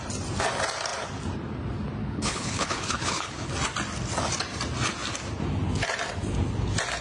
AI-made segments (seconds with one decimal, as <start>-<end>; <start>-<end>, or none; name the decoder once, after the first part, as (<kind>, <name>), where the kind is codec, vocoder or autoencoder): 2.0-3.5 (codec, HILCodec)